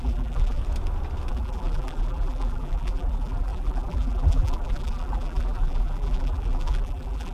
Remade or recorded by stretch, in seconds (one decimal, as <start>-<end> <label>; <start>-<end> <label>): 0.0-0.6 remade; 0.6-1.3 recorded; 1.3-7.3 remade